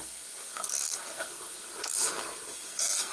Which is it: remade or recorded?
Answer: remade